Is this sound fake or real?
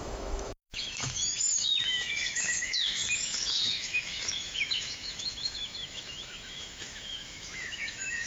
fake